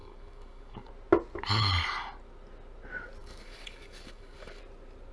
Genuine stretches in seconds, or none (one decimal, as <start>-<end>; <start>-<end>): 0.9-3.2; 4.6-5.1